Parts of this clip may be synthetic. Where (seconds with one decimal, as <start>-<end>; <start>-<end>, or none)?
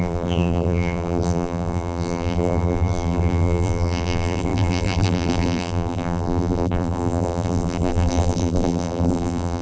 0.0-9.6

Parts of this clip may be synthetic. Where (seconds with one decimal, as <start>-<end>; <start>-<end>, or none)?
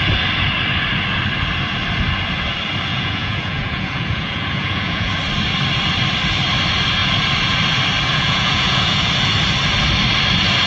2.9-5.1; 8.1-9.1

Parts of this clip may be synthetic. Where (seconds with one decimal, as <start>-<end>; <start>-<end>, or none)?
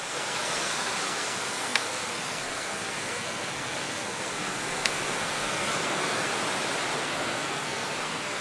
0.0-6.3; 7.0-8.4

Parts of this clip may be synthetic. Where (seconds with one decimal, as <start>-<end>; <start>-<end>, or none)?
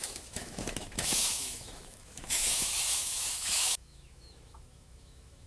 0.0-5.5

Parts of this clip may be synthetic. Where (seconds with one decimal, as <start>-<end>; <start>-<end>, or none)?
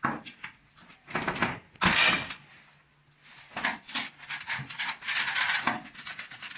none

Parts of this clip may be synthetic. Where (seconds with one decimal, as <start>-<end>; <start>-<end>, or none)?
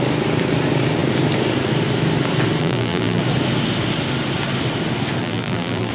2.6-3.2; 5.2-5.9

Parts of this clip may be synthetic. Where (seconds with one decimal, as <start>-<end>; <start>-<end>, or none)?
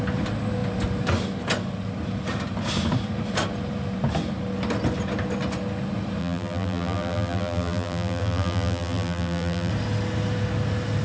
6.2-9.7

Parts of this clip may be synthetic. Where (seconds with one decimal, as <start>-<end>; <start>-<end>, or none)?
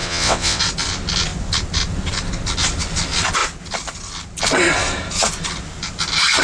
0.0-0.6